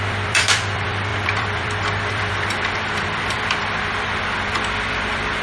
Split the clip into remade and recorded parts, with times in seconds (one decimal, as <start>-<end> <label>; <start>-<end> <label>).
0.0-5.4 remade